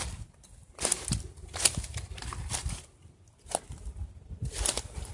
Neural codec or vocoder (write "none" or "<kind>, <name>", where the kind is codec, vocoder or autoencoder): none